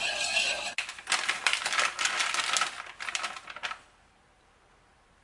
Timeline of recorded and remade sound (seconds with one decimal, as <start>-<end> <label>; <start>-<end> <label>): 0.0-5.2 recorded